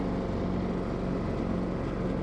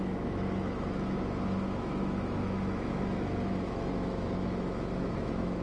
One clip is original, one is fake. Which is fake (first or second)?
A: second